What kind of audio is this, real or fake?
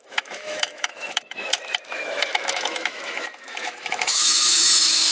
fake